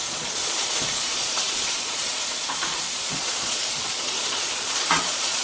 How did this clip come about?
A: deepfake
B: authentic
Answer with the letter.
A